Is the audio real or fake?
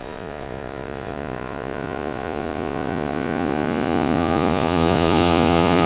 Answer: fake